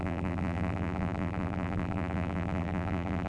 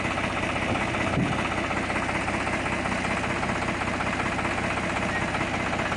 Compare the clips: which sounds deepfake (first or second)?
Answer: first